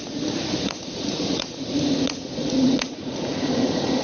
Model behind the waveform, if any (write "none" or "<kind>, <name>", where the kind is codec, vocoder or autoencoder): vocoder, Vocos